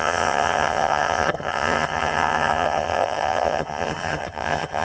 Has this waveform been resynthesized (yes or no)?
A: yes